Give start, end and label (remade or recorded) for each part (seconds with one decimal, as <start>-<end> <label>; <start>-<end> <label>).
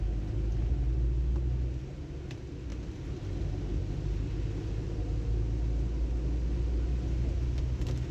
0.0-8.1 recorded